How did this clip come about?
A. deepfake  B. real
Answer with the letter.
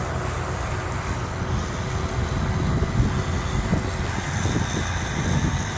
B